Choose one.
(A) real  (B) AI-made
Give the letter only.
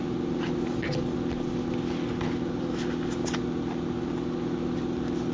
A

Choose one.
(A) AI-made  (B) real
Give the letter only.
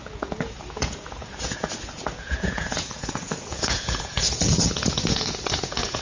A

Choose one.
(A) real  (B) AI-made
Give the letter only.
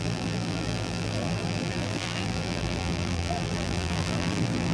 B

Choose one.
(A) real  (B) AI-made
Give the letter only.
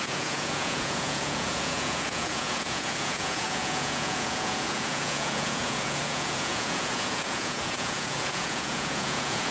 B